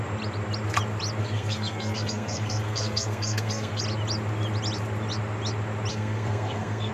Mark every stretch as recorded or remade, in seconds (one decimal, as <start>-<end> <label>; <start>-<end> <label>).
0.0-1.2 recorded; 1.2-3.8 remade; 3.8-5.9 recorded; 5.9-6.9 remade